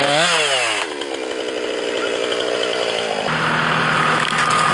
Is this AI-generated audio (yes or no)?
no